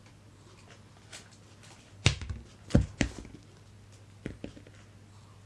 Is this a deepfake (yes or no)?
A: no